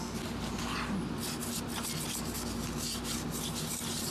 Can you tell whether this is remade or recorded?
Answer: recorded